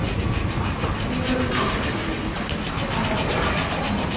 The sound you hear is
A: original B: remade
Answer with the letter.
A